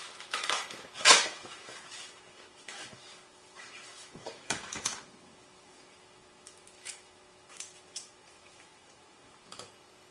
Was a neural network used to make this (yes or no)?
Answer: yes